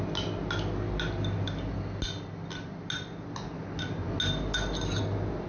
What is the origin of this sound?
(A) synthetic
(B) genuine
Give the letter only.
B